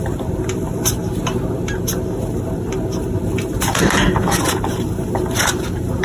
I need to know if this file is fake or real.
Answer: fake